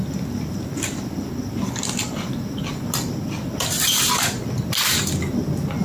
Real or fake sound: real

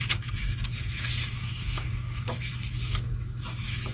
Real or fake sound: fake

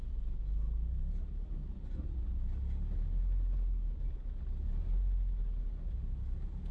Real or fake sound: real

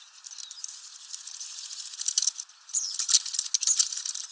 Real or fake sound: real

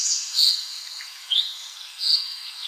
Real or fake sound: fake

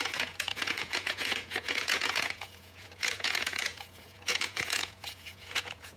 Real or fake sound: fake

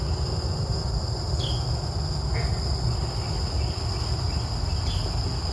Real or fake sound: real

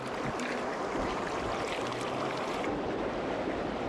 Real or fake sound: real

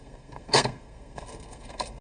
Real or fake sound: fake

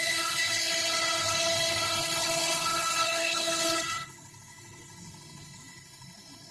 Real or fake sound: fake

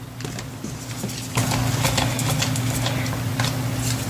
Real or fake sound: real